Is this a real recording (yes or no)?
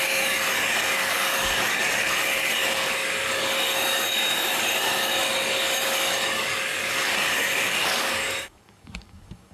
no